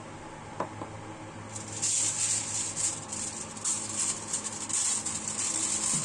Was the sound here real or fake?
real